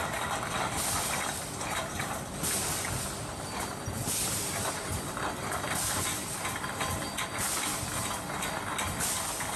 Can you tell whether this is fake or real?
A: real